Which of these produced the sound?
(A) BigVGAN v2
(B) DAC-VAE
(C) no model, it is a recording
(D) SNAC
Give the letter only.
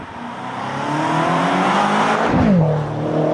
C